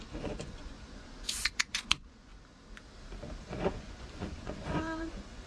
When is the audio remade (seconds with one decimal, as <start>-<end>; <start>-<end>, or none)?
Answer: 0.0-2.3; 3.4-5.5